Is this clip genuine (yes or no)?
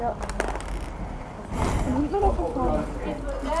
yes